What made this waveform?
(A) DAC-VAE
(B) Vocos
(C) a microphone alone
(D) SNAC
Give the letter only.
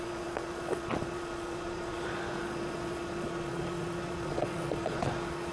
B